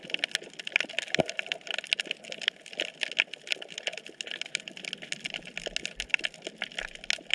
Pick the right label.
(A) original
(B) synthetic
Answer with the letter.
A